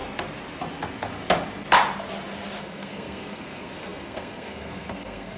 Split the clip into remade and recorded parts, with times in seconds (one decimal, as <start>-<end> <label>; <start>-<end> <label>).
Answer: 0.0-2.6 recorded; 2.6-5.4 remade